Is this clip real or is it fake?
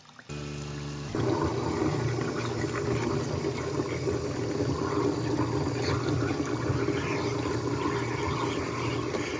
real